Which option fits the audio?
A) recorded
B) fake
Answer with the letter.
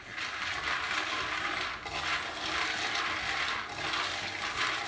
A